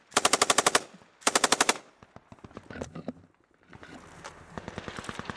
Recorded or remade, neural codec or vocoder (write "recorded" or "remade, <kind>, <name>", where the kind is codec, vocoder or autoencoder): recorded